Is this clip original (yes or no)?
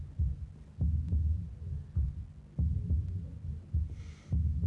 yes